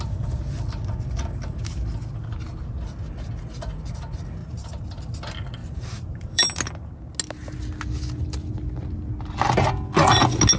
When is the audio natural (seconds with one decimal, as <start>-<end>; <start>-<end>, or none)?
0.0-4.4; 5.0-5.6; 6.7-10.6